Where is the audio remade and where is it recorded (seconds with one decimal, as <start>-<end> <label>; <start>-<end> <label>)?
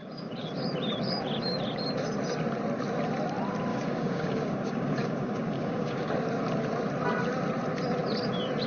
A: 0.0-0.5 remade; 0.5-3.7 recorded; 3.7-6.1 remade; 6.1-8.7 recorded